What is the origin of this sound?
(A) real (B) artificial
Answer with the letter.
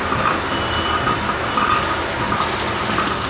A